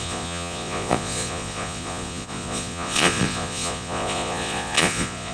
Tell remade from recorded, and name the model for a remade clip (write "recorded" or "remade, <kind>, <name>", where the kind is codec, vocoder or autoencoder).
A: remade, vocoder, Vocos